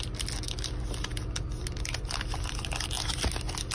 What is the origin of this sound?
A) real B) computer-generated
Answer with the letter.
A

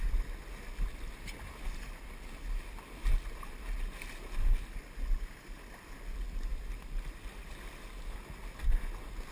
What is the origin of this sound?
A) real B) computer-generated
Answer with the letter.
A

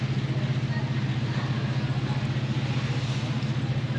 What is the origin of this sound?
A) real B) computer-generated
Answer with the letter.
A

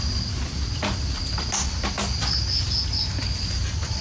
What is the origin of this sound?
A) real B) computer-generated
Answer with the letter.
A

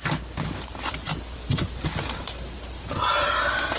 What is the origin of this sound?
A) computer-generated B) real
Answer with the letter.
B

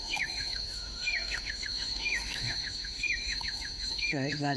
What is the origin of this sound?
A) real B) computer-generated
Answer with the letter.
B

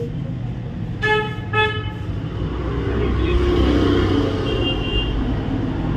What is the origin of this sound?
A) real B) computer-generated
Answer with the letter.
A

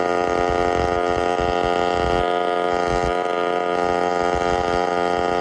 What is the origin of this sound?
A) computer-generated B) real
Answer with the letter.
B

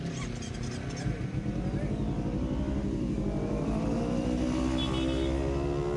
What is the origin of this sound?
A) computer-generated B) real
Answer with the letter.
B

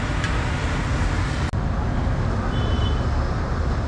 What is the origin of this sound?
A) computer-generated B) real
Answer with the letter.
B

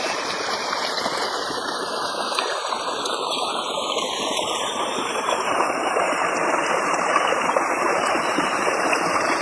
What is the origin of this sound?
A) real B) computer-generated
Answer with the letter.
B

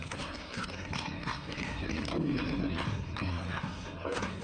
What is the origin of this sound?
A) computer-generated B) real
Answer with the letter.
A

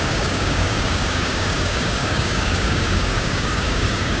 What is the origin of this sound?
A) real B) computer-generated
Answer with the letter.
B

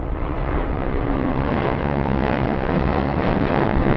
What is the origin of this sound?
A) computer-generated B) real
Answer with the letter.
A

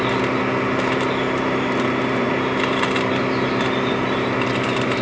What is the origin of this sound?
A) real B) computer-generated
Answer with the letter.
A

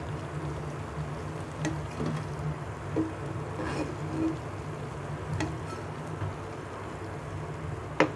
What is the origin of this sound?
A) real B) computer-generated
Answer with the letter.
A